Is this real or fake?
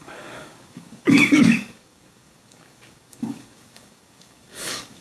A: fake